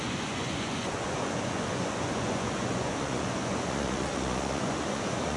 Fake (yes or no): yes